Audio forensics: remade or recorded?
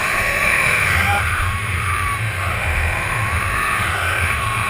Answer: remade